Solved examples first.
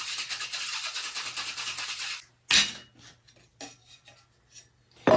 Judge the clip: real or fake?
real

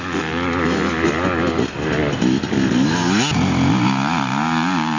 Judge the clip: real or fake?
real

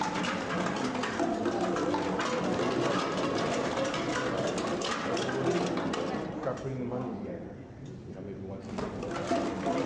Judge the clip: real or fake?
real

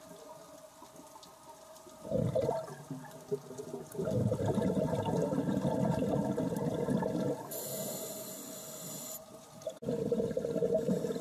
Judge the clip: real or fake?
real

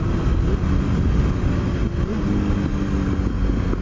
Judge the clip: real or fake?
real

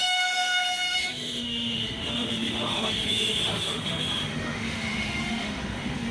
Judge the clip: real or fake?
fake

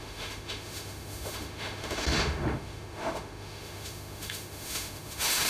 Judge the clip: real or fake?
fake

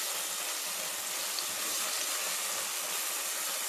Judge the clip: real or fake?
real